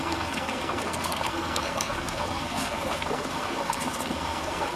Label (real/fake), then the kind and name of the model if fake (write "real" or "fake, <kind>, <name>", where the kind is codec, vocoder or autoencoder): fake, codec, SNAC